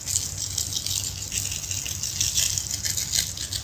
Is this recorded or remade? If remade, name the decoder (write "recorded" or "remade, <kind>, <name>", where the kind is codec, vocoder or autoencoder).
recorded